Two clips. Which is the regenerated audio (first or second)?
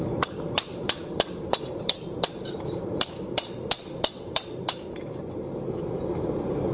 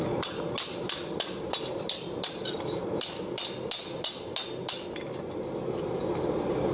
first